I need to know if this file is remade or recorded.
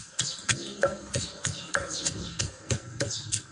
remade